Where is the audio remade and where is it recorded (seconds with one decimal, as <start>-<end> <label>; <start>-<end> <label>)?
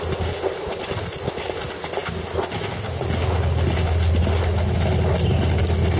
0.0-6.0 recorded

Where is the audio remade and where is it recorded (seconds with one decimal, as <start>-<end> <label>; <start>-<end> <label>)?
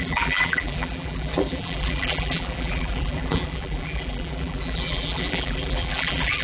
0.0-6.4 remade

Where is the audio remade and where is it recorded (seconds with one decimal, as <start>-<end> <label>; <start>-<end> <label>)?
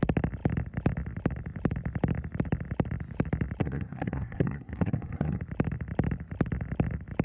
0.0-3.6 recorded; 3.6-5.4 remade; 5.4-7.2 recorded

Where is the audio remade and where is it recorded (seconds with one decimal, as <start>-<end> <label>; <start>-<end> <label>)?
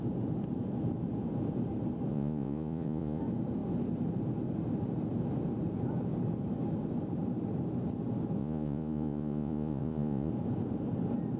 0.0-2.1 recorded; 2.1-3.2 remade; 3.2-8.4 recorded; 8.4-10.3 remade; 10.3-11.4 recorded